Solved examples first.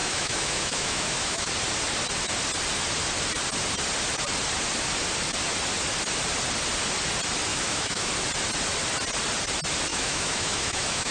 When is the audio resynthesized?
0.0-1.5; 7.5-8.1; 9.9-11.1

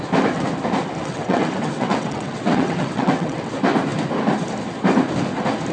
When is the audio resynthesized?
1.0-3.5

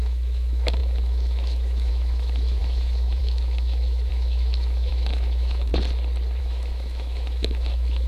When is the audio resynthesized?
0.0-5.7; 6.4-8.1

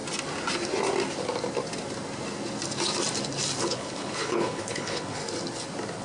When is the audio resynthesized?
3.6-5.2

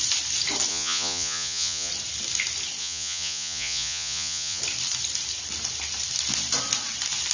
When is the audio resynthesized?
0.7-1.9; 2.8-4.6

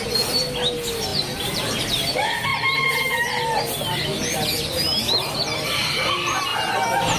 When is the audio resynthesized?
none

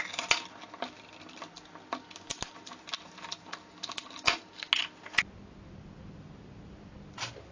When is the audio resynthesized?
none